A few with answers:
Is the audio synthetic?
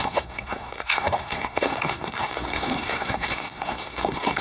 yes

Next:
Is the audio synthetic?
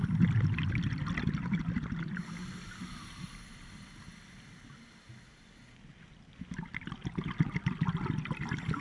no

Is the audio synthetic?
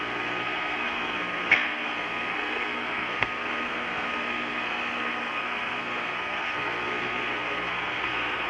yes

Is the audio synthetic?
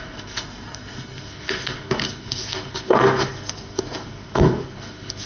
yes